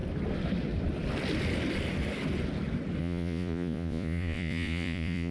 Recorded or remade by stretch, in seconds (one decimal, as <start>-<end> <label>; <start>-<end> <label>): 0.0-3.0 recorded; 3.0-5.3 remade